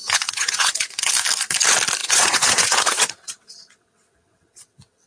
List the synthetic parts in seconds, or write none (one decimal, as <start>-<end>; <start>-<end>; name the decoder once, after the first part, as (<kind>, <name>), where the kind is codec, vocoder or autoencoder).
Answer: 0.0-1.1 (vocoder, WaveNeXt); 2.0-5.1